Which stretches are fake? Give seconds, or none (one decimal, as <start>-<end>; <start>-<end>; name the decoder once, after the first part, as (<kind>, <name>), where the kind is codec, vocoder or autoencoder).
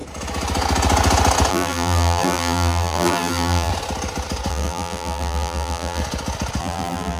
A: 1.5-3.7 (vocoder, BigVGAN v2); 4.5-6.0; 6.6-7.2